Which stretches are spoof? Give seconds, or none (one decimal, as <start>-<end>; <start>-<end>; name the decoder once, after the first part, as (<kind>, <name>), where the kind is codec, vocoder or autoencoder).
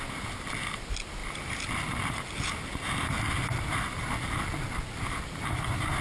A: none